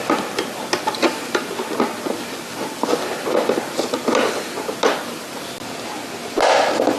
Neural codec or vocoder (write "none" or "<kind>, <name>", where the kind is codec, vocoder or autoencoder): none